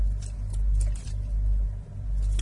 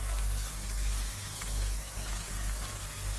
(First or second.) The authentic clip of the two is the first